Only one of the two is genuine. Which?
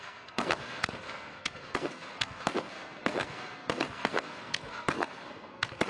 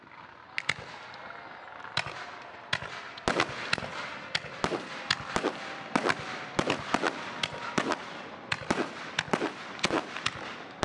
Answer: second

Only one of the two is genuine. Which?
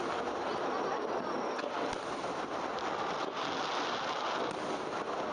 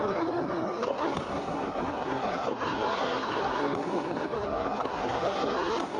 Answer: first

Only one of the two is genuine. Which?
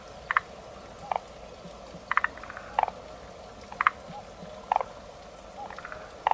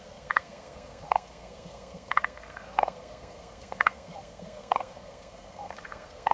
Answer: first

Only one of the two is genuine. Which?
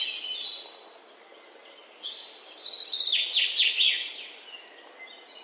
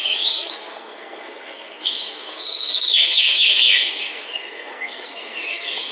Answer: first